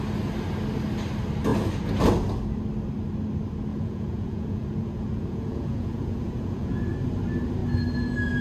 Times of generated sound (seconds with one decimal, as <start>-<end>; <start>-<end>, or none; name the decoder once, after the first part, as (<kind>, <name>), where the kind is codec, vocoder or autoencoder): 3.7-6.8 (vocoder, Vocos)